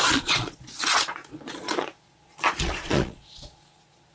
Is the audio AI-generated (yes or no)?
yes